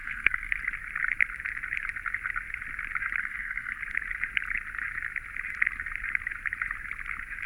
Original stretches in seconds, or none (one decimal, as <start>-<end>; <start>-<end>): 0.6-3.2; 3.8-7.5

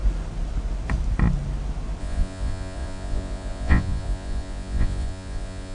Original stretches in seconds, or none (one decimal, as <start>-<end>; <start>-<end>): 0.0-2.0